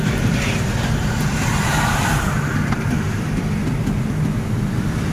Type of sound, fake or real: fake